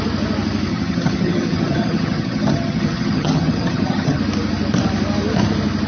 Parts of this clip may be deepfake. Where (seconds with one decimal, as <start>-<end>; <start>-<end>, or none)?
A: 0.7-4.2